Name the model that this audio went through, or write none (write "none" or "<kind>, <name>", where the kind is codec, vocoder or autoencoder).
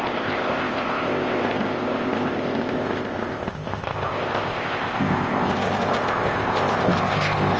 codec, ZipCodec